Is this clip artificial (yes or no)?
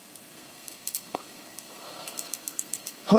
yes